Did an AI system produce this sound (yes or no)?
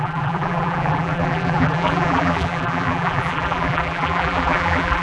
yes